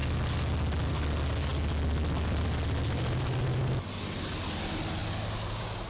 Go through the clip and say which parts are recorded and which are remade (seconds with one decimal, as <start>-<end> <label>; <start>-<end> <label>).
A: 0.0-5.9 recorded